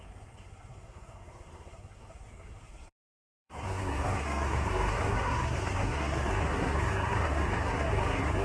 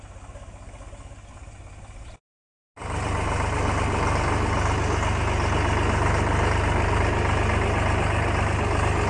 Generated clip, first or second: first